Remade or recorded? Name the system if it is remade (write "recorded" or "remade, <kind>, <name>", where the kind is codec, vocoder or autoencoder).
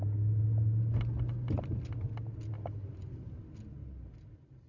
recorded